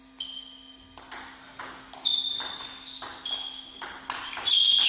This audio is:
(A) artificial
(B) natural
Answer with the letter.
B